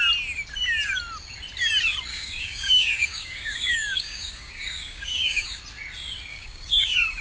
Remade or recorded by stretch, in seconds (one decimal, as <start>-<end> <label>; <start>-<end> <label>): 0.0-2.1 recorded; 2.1-5.6 remade; 5.6-6.3 recorded; 6.3-7.2 remade